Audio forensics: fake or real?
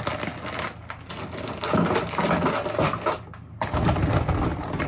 real